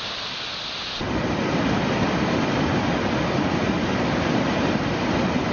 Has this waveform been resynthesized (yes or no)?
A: no